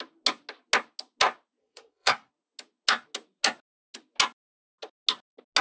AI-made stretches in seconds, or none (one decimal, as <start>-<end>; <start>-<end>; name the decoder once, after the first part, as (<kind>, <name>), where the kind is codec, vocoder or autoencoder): 1.6-2.3 (codec, SNAC)